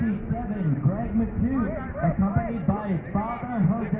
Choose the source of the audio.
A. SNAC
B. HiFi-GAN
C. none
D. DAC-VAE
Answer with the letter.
C